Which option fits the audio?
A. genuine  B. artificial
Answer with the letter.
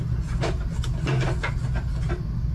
A